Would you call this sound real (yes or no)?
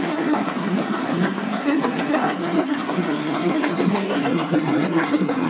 no